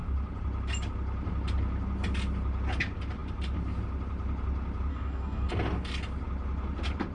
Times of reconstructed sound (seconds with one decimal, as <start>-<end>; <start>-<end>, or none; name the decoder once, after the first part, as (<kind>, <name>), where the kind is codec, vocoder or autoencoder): 4.9-5.5 (codec, DAC)